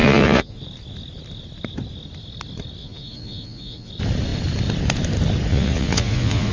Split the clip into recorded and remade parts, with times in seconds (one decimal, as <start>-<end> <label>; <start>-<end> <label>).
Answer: 0.0-0.6 remade; 0.6-2.8 recorded; 2.8-3.9 remade; 3.9-5.5 recorded; 5.5-6.5 remade